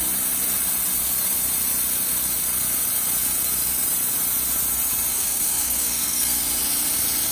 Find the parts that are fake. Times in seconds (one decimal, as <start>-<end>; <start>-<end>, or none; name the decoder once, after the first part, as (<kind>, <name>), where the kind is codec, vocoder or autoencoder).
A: 5.1-6.4 (codec, SNAC)